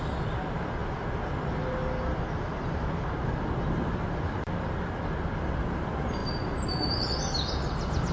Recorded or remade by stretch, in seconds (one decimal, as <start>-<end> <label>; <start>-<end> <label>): 0.0-8.1 recorded